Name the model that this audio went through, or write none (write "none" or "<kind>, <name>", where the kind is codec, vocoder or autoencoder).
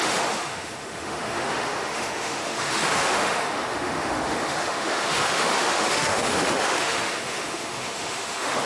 autoencoder, DAC-VAE